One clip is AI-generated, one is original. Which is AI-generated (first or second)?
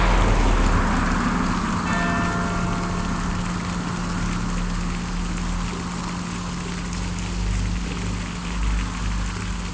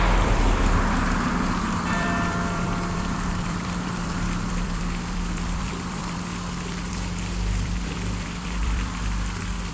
second